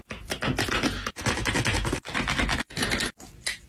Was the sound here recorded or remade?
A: recorded